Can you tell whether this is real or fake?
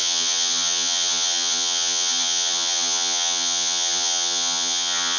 fake